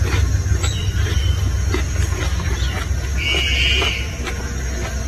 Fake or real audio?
real